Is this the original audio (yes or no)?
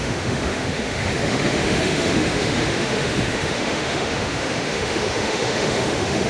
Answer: no